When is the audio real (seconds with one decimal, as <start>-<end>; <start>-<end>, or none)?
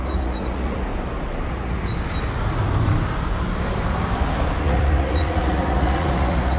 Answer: 0.9-1.5; 1.9-4.6